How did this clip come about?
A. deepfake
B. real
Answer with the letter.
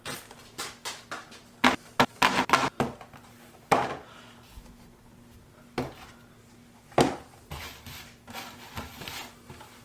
B